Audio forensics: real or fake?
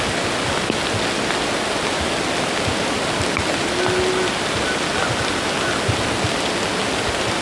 real